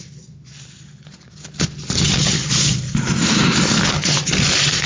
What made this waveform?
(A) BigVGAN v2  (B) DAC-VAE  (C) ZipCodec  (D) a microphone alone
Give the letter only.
D